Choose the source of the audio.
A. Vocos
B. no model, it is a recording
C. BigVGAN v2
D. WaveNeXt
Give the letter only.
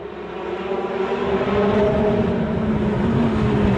B